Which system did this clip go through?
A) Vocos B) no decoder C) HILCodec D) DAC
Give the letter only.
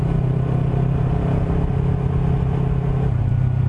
B